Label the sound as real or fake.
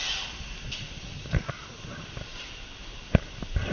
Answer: real